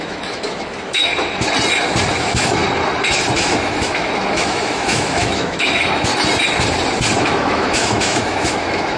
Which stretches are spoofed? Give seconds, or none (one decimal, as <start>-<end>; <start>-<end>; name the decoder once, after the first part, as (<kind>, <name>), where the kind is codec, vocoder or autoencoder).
0.0-1.1 (autoencoder, DAC-VAE); 2.2-2.6; 3.3-6.1; 7.2-9.0